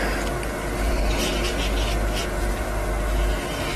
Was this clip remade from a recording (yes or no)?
no